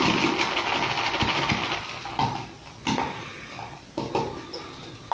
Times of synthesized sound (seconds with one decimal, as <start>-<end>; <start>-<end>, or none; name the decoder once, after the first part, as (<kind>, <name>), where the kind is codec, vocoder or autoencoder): none